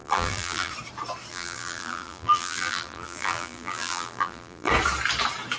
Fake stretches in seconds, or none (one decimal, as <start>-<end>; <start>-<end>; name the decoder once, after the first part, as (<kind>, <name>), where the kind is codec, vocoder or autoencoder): 0.0-0.7 (vocoder, BigVGAN v2); 1.3-4.7